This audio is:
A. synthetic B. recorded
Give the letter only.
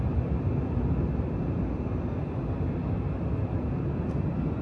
B